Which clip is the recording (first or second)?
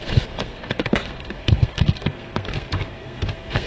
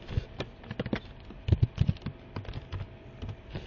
second